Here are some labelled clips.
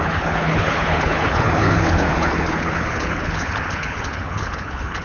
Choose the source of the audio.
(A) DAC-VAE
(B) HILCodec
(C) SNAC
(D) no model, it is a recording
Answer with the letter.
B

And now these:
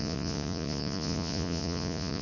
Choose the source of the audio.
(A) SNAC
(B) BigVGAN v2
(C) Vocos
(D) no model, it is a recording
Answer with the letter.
C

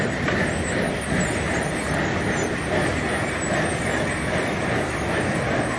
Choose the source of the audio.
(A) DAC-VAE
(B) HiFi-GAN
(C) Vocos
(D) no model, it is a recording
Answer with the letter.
D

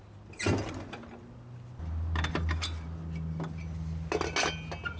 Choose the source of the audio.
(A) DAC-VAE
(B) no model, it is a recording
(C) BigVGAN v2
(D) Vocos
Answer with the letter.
B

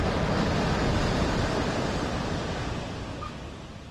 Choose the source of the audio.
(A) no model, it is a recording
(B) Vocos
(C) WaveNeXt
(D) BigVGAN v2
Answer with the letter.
A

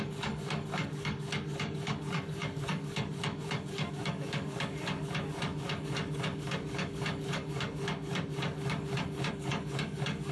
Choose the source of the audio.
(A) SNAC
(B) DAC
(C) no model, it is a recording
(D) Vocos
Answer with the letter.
B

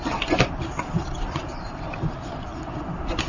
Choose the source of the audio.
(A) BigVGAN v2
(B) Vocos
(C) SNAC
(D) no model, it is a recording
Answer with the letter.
A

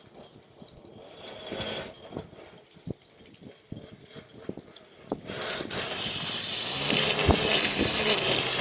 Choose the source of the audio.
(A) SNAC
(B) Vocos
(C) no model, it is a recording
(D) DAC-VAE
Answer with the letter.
C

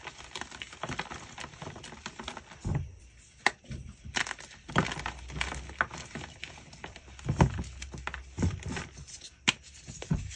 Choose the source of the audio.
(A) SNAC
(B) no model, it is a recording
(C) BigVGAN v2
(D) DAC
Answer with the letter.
B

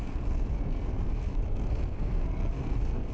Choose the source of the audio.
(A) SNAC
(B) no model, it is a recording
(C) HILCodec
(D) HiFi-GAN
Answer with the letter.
A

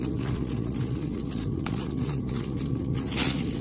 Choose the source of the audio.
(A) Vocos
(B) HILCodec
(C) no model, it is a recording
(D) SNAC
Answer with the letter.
A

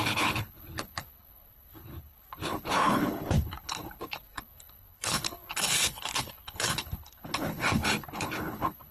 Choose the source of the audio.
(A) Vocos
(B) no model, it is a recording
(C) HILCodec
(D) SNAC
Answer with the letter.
C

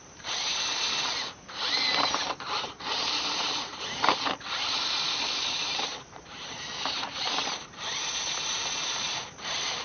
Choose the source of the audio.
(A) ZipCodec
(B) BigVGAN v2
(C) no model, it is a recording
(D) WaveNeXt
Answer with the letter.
B